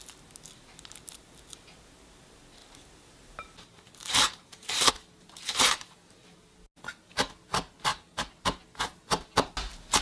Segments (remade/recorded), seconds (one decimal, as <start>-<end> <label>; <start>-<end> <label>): 0.0-2.6 recorded; 2.6-4.9 remade; 4.9-7.9 recorded; 7.9-8.6 remade; 8.6-10.0 recorded